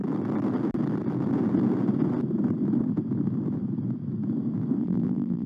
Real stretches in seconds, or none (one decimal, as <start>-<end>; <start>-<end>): 0.0-4.8